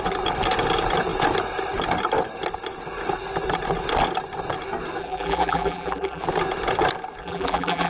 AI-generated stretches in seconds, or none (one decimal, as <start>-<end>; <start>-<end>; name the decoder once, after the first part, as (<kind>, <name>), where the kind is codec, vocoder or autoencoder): 5.0-6.2 (vocoder, BigVGAN v2); 7.2-7.9